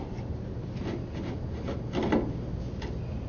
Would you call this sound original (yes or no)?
yes